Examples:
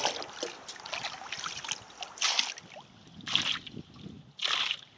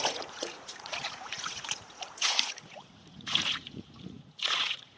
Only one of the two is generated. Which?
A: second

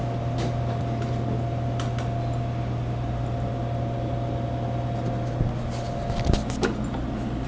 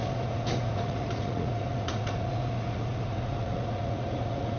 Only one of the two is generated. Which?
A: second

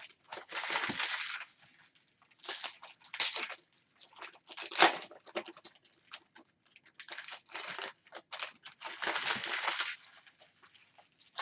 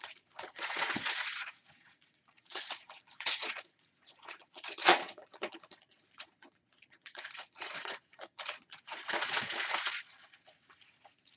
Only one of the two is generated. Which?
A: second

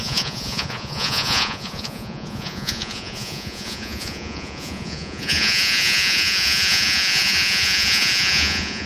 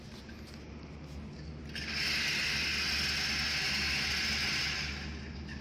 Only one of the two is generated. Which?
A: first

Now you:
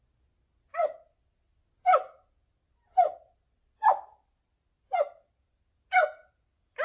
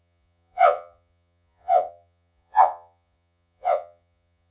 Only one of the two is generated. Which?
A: second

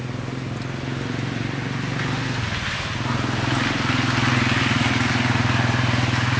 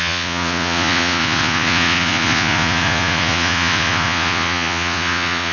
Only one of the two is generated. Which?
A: second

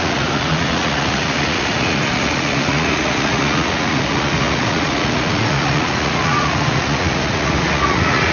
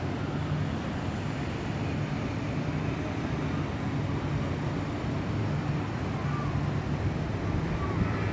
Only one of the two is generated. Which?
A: first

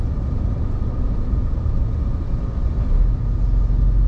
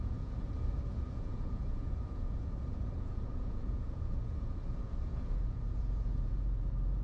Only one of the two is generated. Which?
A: second